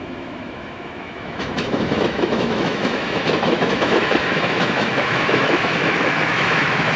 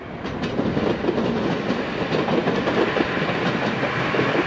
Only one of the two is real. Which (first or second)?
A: second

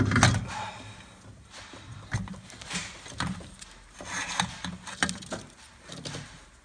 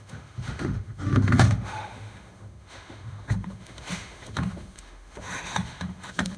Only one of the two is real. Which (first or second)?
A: first